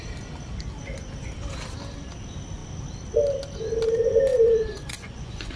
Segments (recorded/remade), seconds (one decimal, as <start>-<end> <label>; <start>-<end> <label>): 0.0-4.3 recorded; 4.3-5.6 remade